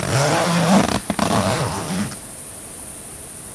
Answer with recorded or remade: recorded